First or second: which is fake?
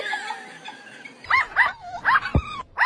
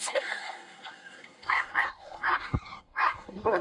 second